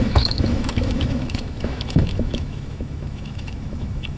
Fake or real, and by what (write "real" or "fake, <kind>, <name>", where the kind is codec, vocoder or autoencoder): fake, autoencoder, DAC-VAE